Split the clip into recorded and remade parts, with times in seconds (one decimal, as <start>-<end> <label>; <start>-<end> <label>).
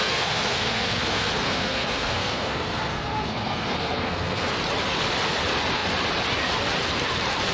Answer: 0.0-4.5 remade; 4.5-7.5 recorded